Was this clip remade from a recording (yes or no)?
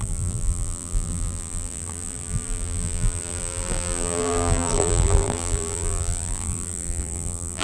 yes